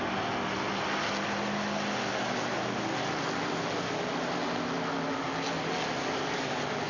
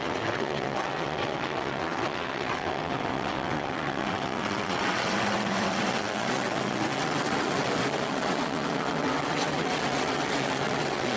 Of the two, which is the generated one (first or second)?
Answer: second